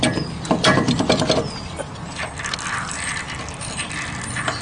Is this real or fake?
real